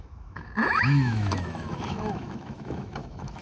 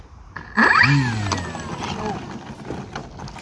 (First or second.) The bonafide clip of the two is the second